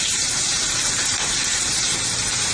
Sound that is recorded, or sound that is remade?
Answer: remade